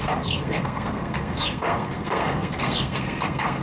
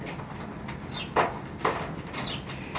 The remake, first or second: first